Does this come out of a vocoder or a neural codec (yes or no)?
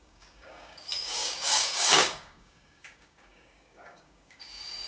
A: yes